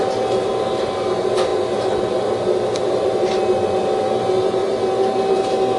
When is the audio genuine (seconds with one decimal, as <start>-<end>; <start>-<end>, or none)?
0.0-5.8